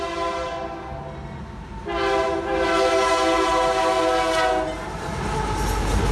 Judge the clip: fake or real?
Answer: real